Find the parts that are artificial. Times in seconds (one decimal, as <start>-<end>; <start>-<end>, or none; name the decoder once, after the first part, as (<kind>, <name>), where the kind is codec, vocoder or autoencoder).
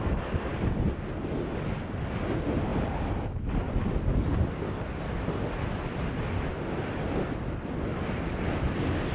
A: none